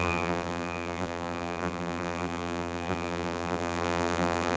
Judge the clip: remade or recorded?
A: remade